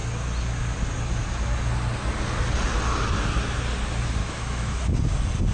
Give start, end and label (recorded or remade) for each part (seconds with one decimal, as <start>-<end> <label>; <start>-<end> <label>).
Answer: 0.0-4.2 recorded; 4.2-4.8 remade; 4.8-5.5 recorded